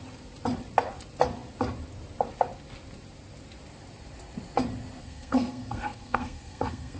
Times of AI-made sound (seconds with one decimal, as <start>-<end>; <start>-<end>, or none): 5.0-7.0